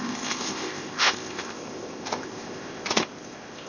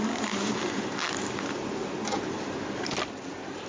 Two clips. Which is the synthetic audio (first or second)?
first